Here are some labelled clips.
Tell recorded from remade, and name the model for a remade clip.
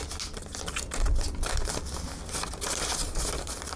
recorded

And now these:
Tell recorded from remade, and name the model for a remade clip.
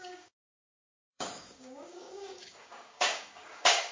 remade, codec, DAC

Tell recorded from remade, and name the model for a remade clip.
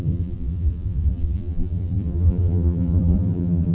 remade, vocoder, BigVGAN v2